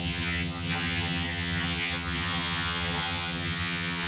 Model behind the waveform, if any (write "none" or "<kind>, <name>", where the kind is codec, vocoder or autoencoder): vocoder, HiFi-GAN